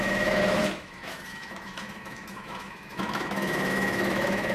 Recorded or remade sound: remade